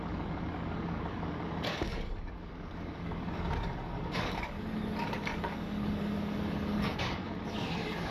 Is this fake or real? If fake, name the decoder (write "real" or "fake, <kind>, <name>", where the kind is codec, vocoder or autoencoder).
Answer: fake, codec, DAC